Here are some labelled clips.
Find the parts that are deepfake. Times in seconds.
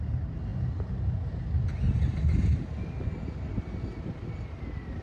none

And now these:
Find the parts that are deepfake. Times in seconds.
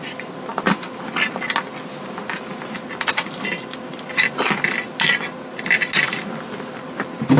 none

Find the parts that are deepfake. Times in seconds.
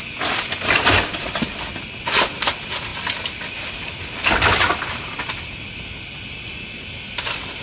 none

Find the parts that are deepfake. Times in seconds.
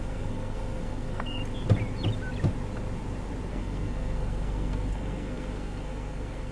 0.0-1.4 (codec, SNAC); 3.5-6.5